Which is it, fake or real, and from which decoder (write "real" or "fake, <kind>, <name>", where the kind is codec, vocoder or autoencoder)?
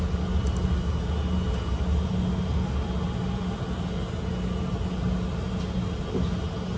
real